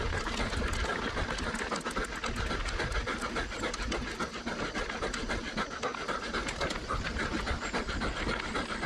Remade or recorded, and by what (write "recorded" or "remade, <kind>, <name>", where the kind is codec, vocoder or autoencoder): recorded